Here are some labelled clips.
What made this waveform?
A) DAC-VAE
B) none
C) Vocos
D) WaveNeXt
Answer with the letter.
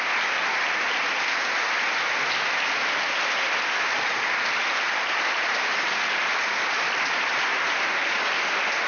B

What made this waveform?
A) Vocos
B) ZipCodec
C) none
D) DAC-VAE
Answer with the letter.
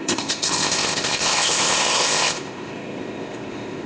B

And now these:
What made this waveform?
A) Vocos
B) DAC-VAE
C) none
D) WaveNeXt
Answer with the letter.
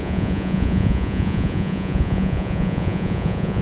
A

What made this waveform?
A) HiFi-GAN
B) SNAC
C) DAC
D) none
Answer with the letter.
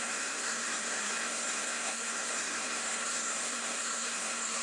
B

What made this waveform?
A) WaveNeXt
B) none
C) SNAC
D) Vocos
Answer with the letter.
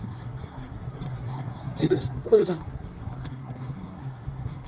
C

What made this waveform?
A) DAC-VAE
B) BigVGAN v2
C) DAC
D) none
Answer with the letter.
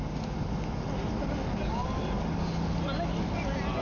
D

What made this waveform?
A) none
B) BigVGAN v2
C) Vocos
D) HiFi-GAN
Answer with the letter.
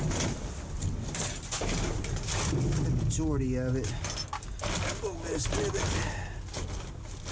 A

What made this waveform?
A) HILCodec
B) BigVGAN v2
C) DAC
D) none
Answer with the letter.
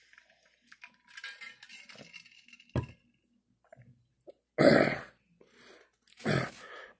D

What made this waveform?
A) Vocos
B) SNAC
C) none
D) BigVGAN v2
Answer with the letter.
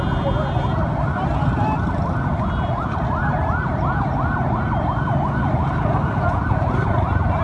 C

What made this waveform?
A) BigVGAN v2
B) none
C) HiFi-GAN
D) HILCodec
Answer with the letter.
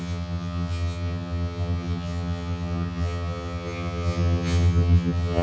C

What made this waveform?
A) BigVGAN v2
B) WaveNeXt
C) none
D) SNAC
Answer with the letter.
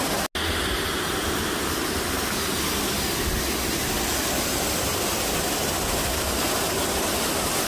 C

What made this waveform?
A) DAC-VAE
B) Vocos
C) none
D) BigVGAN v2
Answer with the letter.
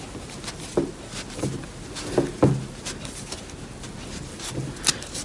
C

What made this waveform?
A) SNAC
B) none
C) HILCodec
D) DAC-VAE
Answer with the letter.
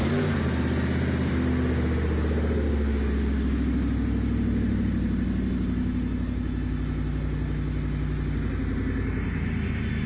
B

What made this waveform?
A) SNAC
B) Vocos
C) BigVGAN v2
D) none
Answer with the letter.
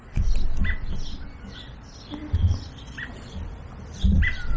D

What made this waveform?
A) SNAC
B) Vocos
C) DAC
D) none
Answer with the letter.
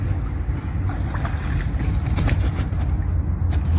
D